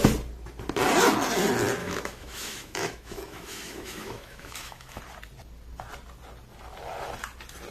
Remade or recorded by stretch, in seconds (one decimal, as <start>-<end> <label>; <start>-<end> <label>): 0.0-1.8 recorded; 1.8-5.0 remade; 5.0-7.7 recorded